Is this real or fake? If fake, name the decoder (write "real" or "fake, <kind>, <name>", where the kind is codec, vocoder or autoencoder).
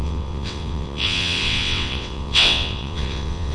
fake, vocoder, WaveNeXt